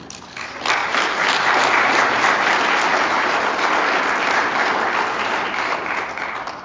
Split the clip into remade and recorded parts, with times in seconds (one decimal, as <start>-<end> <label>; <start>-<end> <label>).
0.0-0.8 recorded; 0.8-2.5 remade; 2.5-2.9 recorded; 2.9-3.4 remade; 3.4-5.2 recorded; 5.2-6.1 remade; 6.1-6.6 recorded